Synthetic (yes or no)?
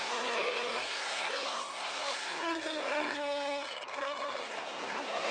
yes